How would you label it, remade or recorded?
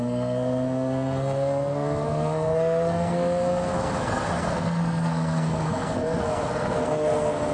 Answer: remade